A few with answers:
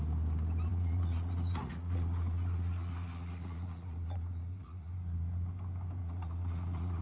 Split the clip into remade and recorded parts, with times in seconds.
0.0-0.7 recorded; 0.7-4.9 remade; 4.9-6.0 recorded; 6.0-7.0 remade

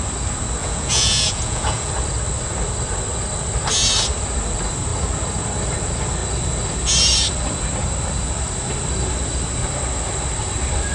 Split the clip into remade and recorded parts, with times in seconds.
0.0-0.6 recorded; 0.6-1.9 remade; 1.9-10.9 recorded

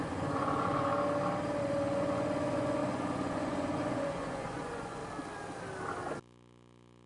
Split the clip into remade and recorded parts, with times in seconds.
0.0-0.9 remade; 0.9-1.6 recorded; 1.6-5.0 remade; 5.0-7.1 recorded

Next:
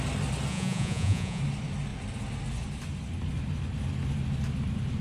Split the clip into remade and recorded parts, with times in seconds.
0.0-0.5 recorded; 0.5-1.4 remade; 1.4-5.0 recorded